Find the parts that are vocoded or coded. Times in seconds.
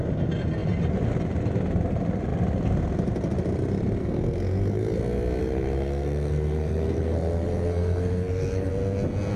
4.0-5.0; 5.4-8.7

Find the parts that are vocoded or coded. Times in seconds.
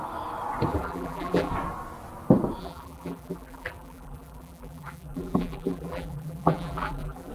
0.7-1.5; 2.6-7.3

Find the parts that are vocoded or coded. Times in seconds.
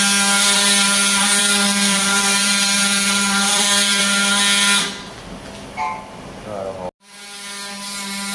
1.4-4.0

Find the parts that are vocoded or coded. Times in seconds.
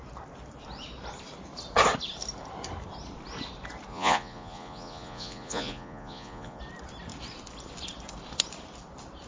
3.9-6.6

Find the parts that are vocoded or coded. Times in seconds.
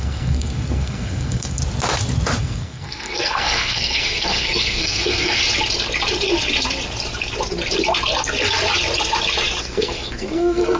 0.0-1.6; 2.4-5.4; 9.6-10.8